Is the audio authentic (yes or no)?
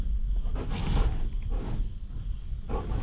yes